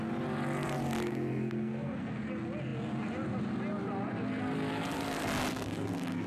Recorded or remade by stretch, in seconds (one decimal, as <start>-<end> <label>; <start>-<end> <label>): 0.0-1.1 recorded; 1.1-2.3 remade; 2.3-5.5 recorded; 5.5-6.3 remade